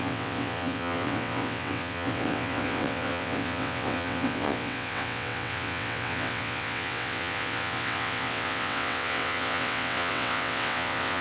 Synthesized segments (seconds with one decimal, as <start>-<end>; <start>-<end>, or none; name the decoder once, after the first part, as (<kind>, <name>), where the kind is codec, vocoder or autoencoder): 0.0-11.2 (vocoder, WaveNeXt)